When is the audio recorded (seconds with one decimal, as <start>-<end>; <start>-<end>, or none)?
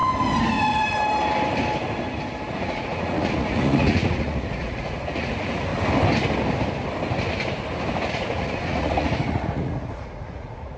0.0-0.6; 1.0-2.5; 5.7-8.1